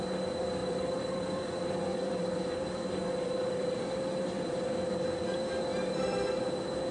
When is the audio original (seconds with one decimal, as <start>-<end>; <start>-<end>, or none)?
0.0-0.6; 4.7-5.7; 6.5-6.9